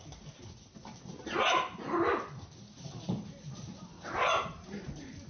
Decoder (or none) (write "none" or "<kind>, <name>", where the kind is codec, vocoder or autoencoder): none